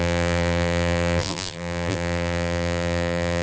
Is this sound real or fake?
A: fake